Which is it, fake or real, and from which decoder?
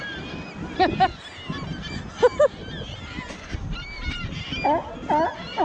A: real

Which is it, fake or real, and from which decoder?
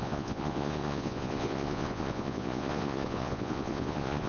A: fake, vocoder, Vocos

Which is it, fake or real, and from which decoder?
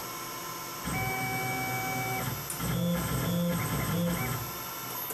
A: real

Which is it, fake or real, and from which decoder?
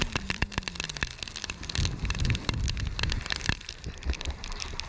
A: real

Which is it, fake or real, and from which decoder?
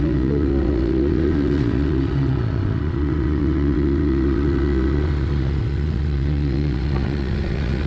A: fake, vocoder, WaveNeXt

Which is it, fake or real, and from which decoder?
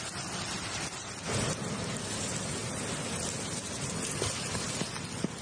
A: real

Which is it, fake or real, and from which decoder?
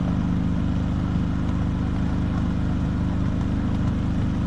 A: real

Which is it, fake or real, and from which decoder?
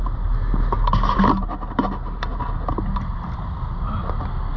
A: real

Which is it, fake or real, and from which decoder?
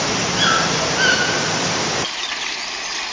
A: real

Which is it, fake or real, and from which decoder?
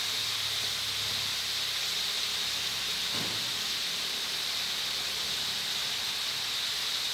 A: real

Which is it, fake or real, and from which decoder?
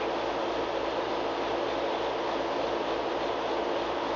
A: real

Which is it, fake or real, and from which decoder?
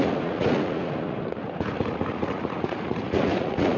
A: fake, vocoder, Vocos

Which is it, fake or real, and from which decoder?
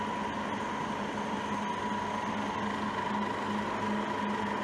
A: real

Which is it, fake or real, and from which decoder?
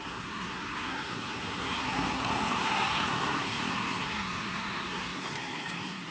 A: fake, codec, SNAC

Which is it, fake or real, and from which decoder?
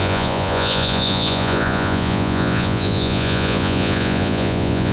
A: fake, vocoder, Vocos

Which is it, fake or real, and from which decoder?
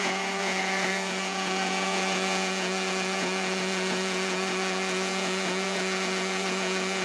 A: fake, vocoder, Vocos